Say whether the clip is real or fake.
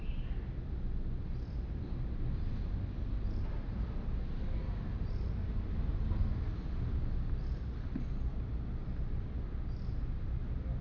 real